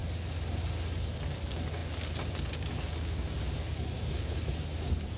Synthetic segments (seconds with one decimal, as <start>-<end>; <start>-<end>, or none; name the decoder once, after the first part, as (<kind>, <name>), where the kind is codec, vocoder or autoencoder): none